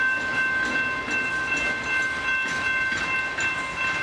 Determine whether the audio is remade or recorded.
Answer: recorded